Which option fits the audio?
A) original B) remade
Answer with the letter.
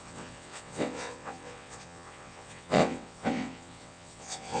B